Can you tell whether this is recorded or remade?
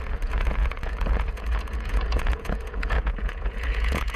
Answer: remade